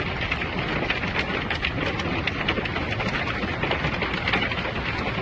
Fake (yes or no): no